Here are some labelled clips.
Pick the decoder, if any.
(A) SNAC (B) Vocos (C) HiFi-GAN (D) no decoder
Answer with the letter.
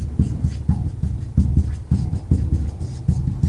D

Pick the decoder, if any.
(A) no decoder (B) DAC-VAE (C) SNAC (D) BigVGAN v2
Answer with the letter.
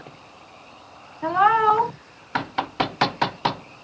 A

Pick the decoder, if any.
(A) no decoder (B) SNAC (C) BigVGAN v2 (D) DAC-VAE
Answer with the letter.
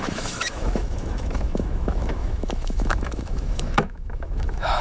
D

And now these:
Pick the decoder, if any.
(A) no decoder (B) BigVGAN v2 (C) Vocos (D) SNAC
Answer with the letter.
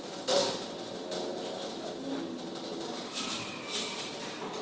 A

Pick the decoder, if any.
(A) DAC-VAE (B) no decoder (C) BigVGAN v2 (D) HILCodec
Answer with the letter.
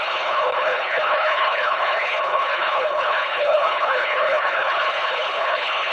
D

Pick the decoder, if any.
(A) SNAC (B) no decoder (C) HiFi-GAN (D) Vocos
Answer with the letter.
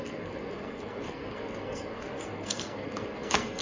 A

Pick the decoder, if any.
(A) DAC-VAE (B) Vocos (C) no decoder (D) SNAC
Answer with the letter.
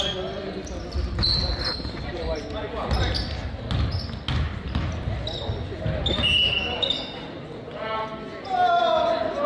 C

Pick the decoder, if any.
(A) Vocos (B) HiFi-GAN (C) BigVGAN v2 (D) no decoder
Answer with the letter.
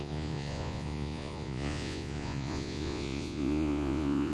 A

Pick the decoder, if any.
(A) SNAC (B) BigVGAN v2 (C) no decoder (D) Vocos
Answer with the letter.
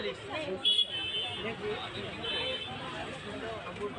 C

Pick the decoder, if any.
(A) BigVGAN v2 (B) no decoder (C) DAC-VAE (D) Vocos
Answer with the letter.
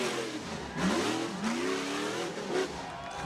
B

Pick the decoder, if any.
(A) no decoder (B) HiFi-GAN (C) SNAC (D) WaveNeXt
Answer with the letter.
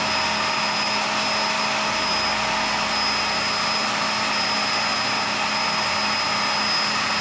A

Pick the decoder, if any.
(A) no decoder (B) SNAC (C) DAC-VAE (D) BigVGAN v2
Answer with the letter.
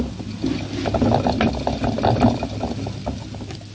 A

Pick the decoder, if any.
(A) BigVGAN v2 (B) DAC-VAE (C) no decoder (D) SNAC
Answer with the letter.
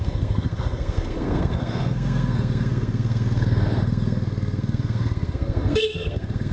D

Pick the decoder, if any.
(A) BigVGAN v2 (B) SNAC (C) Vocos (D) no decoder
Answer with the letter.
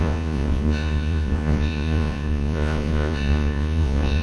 C